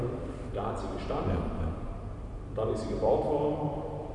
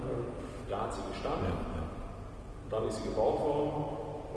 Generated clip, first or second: first